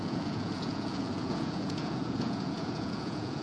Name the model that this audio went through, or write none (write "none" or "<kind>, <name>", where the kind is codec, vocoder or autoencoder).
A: vocoder, Vocos